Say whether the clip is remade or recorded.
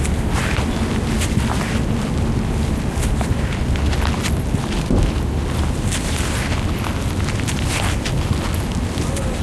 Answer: recorded